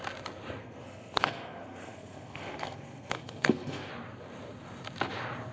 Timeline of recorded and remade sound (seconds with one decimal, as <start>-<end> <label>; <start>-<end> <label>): 0.0-0.6 recorded; 0.6-3.9 remade; 3.9-5.5 recorded